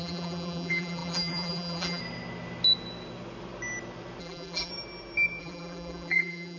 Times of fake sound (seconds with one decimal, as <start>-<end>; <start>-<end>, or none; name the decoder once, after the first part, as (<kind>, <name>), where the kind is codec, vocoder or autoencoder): 0.0-2.0 (vocoder, BigVGAN v2); 4.2-4.7; 5.4-6.6